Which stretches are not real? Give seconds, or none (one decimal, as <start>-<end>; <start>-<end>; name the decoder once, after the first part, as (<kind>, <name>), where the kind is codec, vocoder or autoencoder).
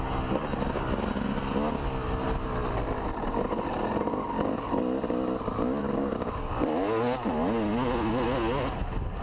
5.8-6.4 (codec, DAC)